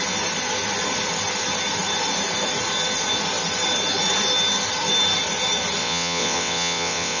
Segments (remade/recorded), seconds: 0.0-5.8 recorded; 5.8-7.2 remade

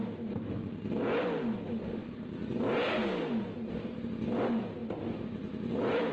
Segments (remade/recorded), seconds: 0.0-6.1 recorded

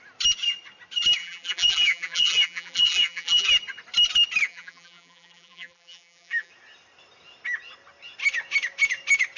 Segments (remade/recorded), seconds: 0.0-1.2 recorded; 1.2-3.5 remade; 3.5-4.5 recorded; 4.5-6.5 remade; 6.5-9.4 recorded

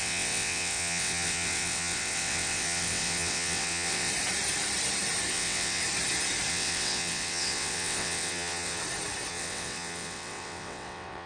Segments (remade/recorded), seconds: 0.0-4.1 remade; 4.1-5.3 recorded; 5.3-5.8 remade; 5.8-6.5 recorded; 6.5-8.8 remade; 8.8-9.3 recorded; 9.3-11.3 remade

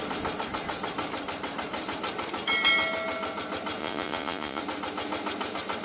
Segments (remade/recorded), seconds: 0.0-3.8 recorded; 3.8-4.6 remade; 4.6-5.8 recorded